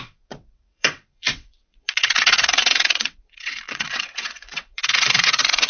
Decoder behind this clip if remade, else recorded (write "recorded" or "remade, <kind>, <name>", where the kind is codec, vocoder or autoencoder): remade, vocoder, WaveNeXt